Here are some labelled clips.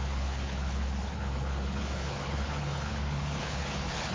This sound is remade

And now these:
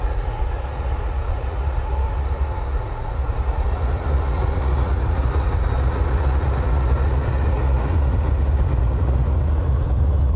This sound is remade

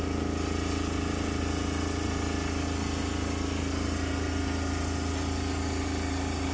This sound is recorded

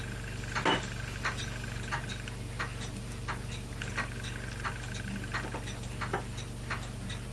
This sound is recorded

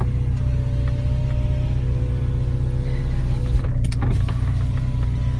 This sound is recorded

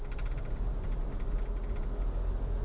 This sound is recorded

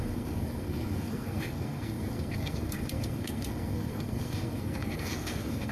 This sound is remade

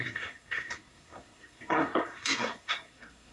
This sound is remade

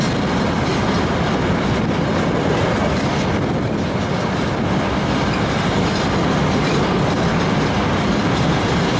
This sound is recorded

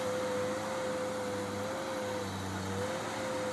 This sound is recorded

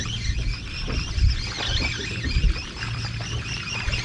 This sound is recorded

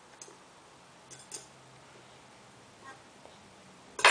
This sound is recorded